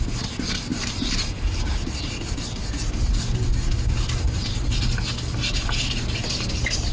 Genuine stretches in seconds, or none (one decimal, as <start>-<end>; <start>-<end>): 0.0-0.7; 2.0-6.9